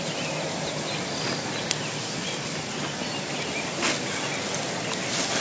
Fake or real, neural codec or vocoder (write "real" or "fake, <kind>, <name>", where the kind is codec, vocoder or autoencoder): real